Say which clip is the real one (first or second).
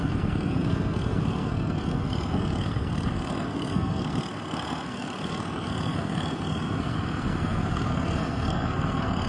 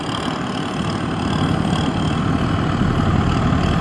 second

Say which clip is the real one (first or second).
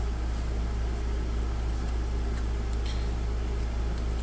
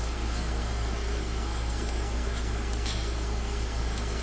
first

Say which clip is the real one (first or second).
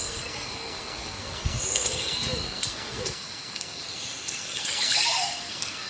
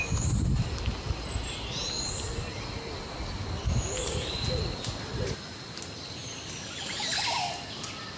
second